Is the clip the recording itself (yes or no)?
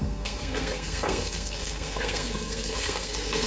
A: no